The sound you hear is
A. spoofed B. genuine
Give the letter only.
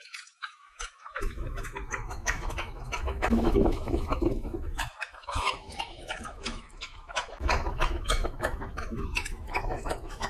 A